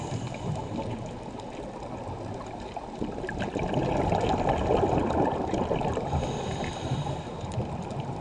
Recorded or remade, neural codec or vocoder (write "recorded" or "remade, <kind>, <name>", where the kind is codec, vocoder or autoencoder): recorded